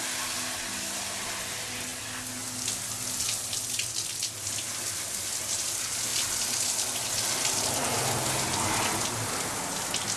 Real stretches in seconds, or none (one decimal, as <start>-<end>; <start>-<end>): 0.0-10.2